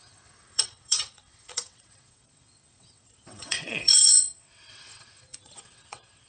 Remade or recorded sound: remade